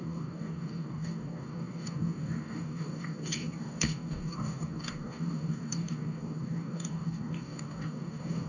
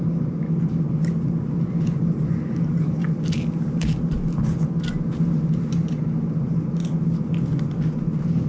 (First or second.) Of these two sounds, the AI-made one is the first